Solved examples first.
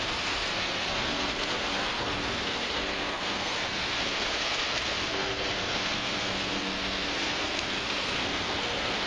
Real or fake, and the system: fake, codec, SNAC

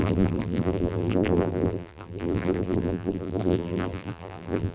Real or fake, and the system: fake, vocoder, BigVGAN v2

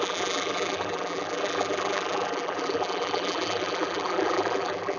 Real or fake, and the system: fake, vocoder, BigVGAN v2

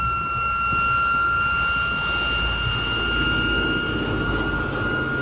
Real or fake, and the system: real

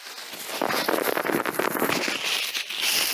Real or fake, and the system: real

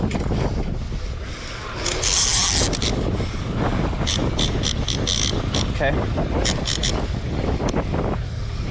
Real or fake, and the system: real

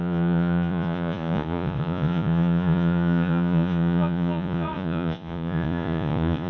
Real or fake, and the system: fake, vocoder, Vocos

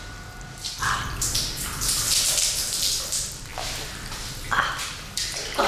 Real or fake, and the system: fake, vocoder, BigVGAN v2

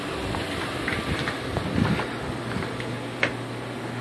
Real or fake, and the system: real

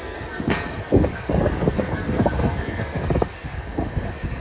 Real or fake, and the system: fake, codec, SNAC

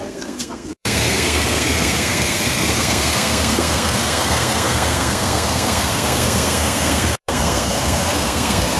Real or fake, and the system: fake, codec, SNAC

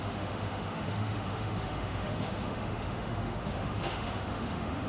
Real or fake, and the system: fake, autoencoder, DAC-VAE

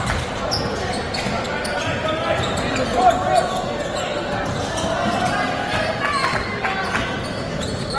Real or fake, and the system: real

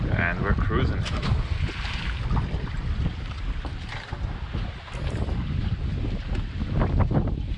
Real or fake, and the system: real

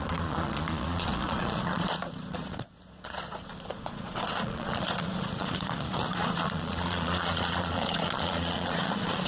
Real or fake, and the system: fake, vocoder, Vocos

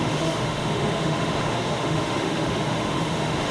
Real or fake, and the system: fake, autoencoder, DAC-VAE